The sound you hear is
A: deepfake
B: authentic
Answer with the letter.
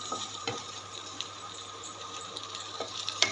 A